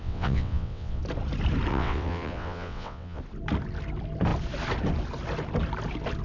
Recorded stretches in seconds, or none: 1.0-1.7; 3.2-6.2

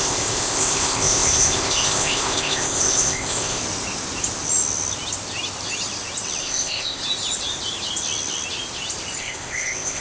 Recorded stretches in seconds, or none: 3.6-6.4; 7.0-9.2

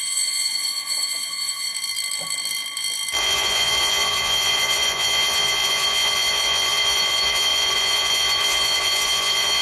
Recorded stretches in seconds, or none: 1.7-3.2

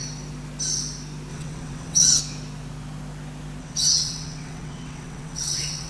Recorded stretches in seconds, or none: 0.0-1.3; 2.2-3.6